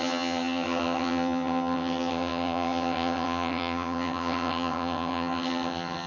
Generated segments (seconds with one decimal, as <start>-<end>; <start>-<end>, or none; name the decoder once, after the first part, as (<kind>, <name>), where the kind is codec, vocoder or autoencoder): 0.0-6.1 (vocoder, HiFi-GAN)